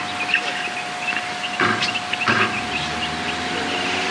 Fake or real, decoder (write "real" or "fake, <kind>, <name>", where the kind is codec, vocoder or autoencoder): real